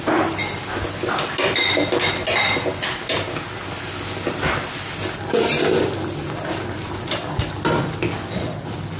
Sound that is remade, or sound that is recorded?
recorded